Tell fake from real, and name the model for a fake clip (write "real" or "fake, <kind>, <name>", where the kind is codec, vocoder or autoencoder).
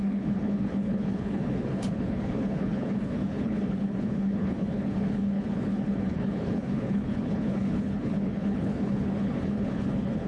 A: fake, codec, HILCodec